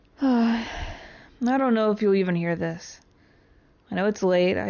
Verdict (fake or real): real